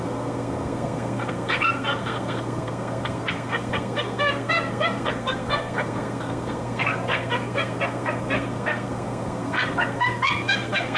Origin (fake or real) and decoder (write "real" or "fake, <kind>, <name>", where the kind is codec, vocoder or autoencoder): fake, codec, SNAC